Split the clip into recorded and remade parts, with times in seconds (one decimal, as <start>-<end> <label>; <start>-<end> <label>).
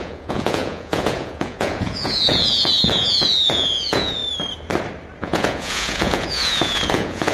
0.0-4.2 remade; 4.2-5.2 recorded; 5.2-7.3 remade